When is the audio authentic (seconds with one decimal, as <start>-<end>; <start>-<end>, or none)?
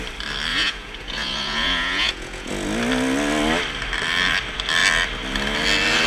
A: 0.0-0.5; 2.5-6.1